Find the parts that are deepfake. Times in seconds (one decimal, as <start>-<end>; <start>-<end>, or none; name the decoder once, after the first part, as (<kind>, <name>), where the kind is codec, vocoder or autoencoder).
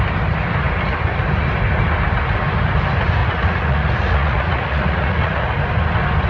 3.2-5.6 (vocoder, Vocos)